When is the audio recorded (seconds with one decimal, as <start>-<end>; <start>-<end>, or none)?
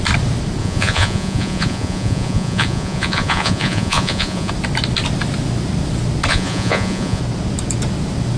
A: 0.0-0.6; 4.5-6.3; 7.2-8.4